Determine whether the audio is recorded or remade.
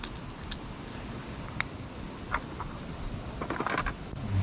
recorded